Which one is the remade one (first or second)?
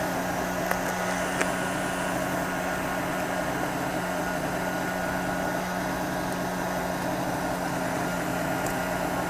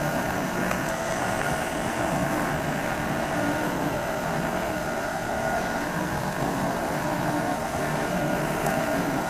second